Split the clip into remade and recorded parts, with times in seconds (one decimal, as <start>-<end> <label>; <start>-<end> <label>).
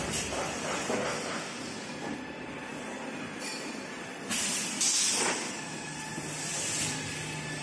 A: 0.0-7.6 recorded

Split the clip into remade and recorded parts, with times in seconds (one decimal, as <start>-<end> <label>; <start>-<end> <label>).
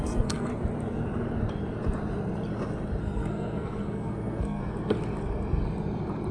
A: 0.0-0.5 remade; 0.5-3.0 recorded; 3.0-4.6 remade; 4.6-6.3 recorded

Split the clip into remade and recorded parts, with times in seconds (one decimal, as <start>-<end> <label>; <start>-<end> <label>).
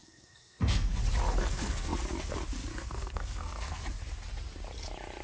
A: 0.0-1.0 remade; 1.0-1.4 recorded; 1.4-2.0 remade; 2.0-2.7 recorded; 2.7-3.8 remade; 3.8-5.2 recorded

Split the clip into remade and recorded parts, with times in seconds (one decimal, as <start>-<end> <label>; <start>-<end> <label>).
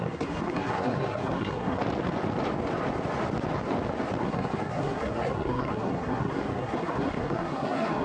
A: 0.0-1.8 remade; 1.8-4.2 recorded; 4.2-8.0 remade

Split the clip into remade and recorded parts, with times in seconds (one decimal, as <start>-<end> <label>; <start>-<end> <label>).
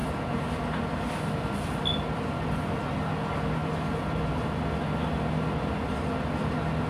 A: 0.0-6.9 recorded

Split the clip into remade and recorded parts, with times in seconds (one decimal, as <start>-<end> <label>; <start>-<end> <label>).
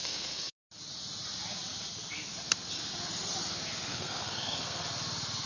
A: 0.0-0.6 remade; 0.6-3.9 recorded; 3.9-4.8 remade; 4.8-5.5 recorded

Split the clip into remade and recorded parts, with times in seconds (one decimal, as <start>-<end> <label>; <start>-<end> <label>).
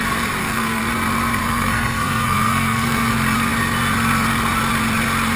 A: 0.0-0.4 recorded; 0.4-0.9 remade; 0.9-1.4 recorded; 1.4-3.1 remade; 3.1-5.4 recorded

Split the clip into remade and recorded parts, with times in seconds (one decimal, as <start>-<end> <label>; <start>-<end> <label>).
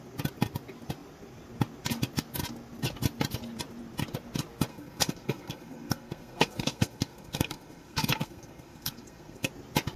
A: 0.0-4.7 recorded; 4.7-9.5 remade; 9.5-10.0 recorded